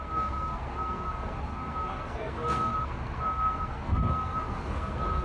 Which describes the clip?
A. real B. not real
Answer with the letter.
B